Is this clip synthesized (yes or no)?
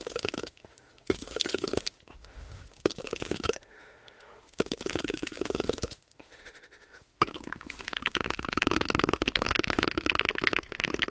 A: yes